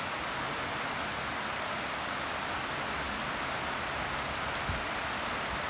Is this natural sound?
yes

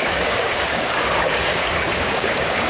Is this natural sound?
no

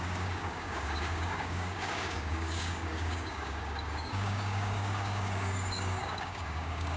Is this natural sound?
no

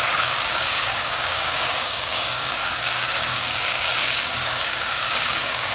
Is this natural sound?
no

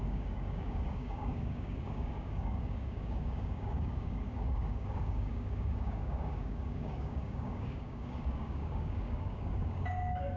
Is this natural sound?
no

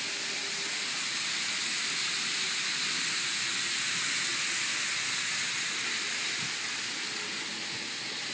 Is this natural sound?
yes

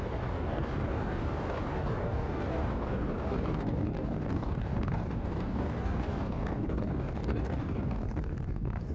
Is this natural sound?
no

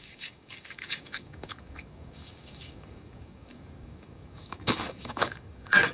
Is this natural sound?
no